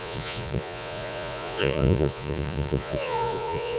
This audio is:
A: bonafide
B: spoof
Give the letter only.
B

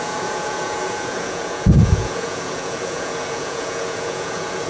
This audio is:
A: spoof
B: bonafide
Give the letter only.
A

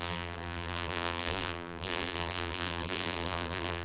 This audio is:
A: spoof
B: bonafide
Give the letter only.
A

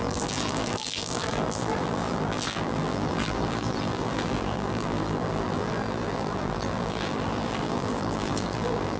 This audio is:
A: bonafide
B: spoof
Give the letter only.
B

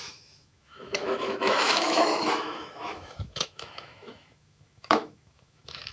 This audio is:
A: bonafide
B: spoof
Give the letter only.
B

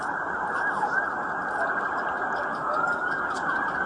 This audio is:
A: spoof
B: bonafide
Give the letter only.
B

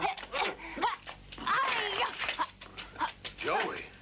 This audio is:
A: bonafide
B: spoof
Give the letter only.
A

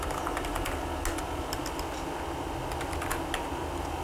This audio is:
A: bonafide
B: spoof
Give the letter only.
A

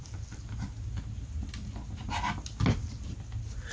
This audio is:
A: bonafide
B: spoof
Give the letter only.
A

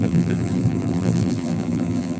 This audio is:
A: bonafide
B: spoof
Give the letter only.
B